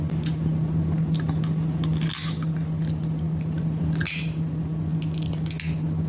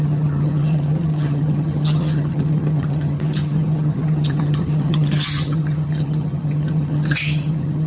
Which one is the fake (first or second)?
second